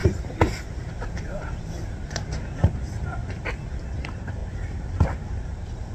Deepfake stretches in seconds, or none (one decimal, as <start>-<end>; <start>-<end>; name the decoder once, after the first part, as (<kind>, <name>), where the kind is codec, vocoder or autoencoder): 0.9-3.2 (vocoder, BigVGAN v2); 4.0-4.4; 5.2-5.9